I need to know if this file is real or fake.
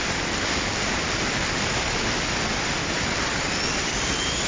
real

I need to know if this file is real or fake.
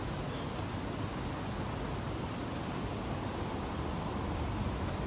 real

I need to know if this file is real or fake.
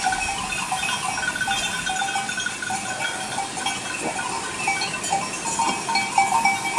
real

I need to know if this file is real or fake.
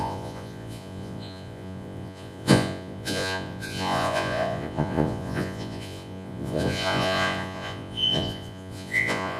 fake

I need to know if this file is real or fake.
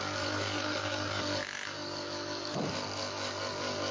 fake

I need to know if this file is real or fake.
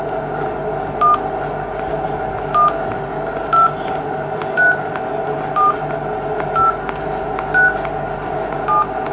real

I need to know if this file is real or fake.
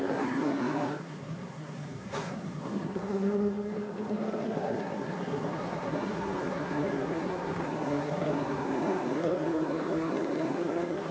fake